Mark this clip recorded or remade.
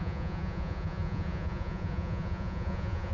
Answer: remade